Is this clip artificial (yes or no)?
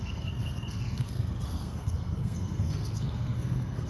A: yes